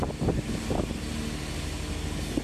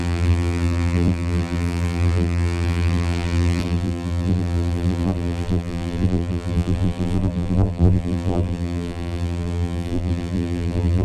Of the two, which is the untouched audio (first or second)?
first